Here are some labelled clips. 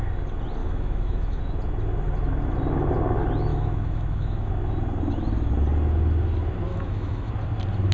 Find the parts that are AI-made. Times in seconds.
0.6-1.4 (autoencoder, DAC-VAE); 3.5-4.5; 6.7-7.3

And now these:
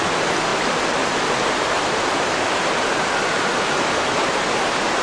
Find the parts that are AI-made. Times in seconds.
none

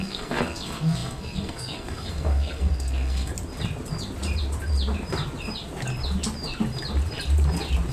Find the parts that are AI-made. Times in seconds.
0.0-3.3 (codec, SNAC)